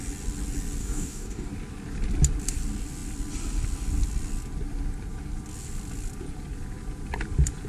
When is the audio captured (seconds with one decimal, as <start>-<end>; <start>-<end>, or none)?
0.0-0.8; 1.5-7.7